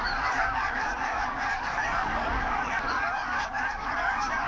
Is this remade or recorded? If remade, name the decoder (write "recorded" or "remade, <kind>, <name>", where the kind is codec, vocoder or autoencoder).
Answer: remade, codec, DAC